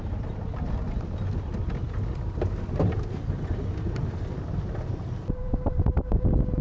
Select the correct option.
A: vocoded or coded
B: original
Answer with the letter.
B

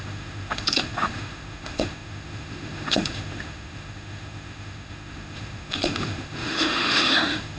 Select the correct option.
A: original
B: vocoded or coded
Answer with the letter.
B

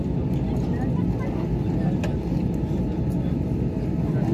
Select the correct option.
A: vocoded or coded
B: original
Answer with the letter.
B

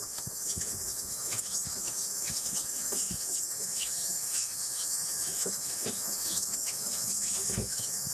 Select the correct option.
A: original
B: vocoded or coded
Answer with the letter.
B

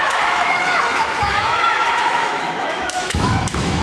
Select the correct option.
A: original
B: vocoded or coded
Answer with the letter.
B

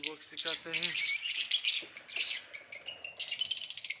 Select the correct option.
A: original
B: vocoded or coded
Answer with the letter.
A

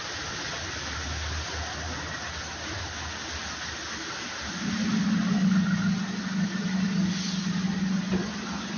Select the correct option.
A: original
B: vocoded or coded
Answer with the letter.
A